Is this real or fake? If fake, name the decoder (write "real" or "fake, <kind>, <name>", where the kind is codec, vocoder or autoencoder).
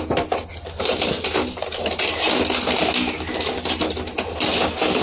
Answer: real